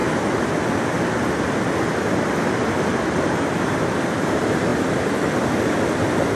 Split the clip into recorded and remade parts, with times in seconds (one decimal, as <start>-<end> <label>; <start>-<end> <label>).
0.0-6.3 recorded